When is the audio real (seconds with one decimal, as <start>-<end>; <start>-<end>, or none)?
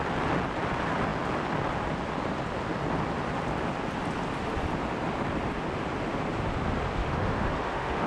0.0-7.0